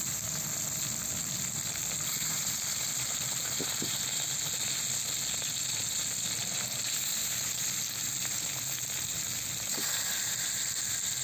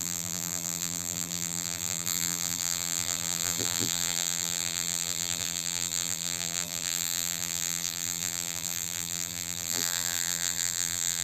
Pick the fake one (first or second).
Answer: second